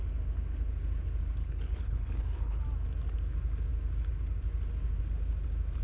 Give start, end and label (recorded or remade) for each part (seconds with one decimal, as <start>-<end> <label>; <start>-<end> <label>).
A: 0.0-1.4 recorded; 1.4-2.6 remade; 2.6-5.8 recorded

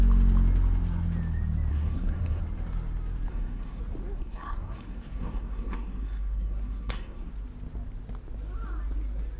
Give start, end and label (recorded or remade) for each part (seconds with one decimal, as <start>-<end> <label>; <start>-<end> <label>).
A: 0.0-1.7 recorded; 1.7-2.4 remade; 2.4-3.3 recorded; 3.3-3.8 remade; 3.8-4.2 recorded; 4.2-7.3 remade; 7.3-9.4 recorded